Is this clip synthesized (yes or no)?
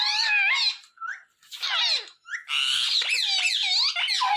no